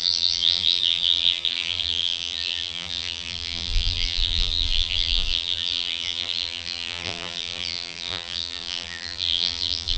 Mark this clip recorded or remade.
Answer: remade